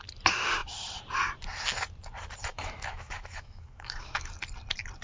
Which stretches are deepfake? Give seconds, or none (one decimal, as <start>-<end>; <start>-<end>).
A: 2.5-4.3